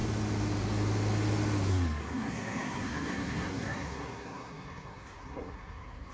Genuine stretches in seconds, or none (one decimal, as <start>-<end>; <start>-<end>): 0.0-1.7